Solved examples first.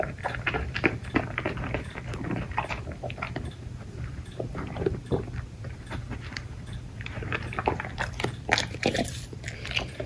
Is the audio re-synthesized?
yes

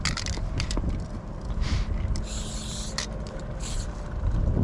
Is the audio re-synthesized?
no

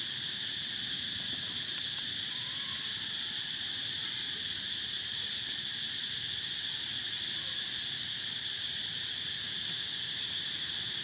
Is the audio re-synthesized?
yes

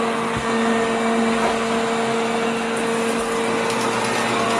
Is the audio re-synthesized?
no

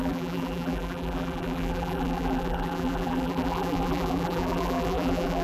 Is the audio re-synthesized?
yes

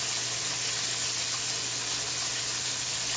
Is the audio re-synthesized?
no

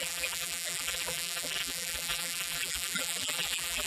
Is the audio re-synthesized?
yes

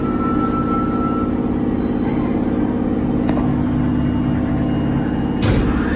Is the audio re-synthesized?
no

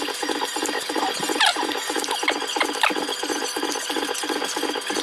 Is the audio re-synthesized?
yes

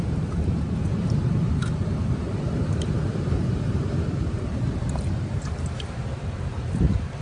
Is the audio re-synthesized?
yes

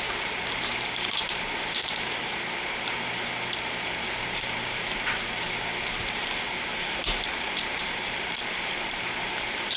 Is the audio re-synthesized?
yes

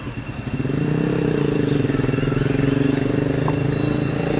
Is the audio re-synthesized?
no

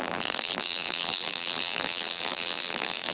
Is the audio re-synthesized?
yes